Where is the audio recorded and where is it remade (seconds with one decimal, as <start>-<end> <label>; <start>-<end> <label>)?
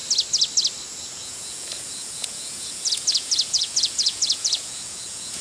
0.0-0.9 recorded; 0.9-5.4 remade